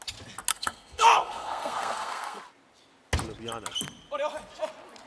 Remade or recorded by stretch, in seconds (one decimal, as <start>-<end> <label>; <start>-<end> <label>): 0.0-0.5 recorded; 0.5-2.4 remade; 2.4-5.1 recorded